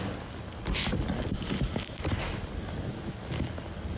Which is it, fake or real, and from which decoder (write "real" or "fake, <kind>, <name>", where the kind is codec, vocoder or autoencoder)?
real